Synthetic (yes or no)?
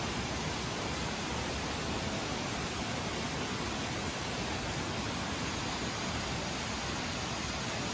no